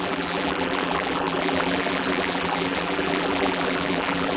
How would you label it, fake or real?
fake